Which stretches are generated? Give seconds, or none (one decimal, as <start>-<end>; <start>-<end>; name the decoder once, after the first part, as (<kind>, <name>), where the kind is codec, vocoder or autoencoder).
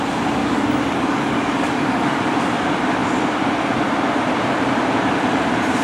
0.4-2.2 (codec, DAC)